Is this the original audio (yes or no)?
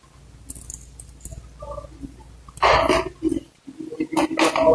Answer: yes